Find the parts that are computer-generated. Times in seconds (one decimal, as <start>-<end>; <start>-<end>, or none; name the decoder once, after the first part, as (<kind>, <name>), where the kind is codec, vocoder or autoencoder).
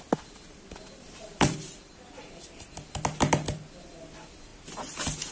none